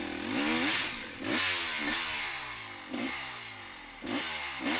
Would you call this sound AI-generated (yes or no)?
no